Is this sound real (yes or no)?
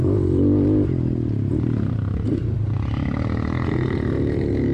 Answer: yes